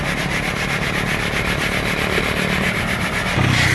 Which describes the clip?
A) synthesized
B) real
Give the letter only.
B